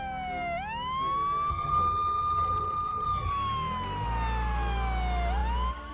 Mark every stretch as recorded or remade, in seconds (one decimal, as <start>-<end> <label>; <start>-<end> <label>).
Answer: 0.0-1.5 recorded; 1.5-3.3 remade; 3.3-5.9 recorded